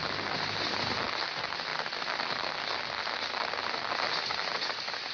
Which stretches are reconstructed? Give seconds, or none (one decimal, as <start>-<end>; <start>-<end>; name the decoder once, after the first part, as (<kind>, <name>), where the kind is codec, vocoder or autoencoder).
none